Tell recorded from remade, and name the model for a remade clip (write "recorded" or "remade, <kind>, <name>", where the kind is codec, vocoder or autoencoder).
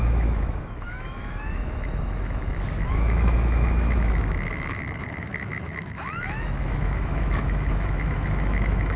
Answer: remade, autoencoder, DAC-VAE